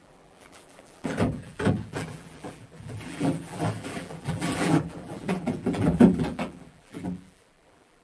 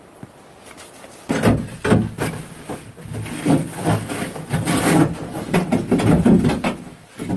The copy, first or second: first